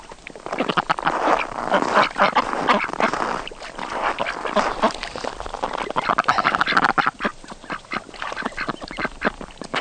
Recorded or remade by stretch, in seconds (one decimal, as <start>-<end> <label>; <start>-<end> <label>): 0.0-9.8 recorded